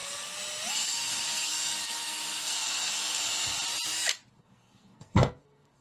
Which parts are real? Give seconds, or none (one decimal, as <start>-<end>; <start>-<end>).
0.0-0.7; 3.2-4.4